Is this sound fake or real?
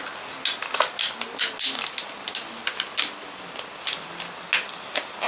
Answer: real